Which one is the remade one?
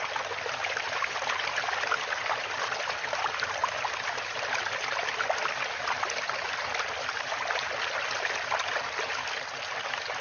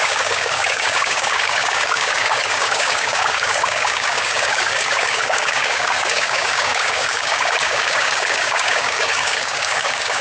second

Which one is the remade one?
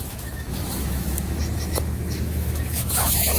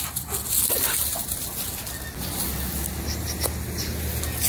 first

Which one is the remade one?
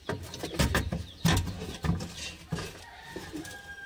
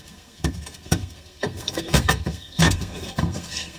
second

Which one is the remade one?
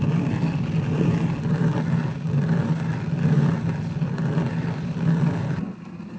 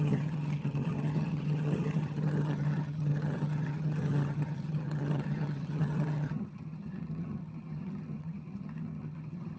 second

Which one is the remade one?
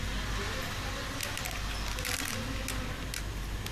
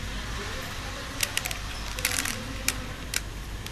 second